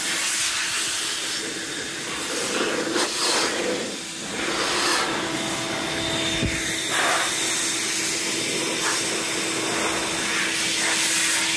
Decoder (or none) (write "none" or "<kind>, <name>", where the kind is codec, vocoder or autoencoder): none